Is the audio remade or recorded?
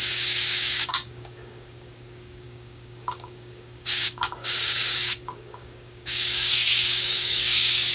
remade